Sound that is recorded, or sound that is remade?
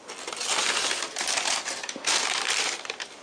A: recorded